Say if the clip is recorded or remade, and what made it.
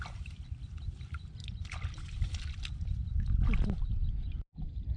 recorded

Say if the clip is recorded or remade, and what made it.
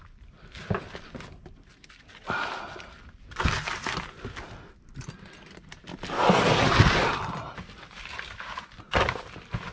recorded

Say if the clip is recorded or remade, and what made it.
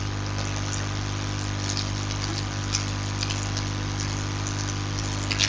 recorded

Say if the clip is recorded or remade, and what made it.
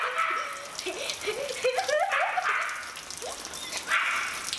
recorded